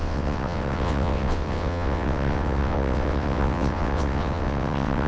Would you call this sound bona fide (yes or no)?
no